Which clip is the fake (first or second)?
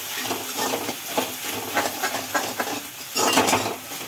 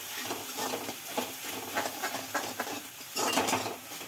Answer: second